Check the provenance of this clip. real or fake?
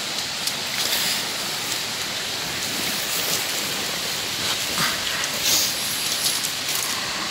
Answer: real